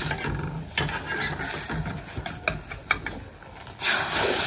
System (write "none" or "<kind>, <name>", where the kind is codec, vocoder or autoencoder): none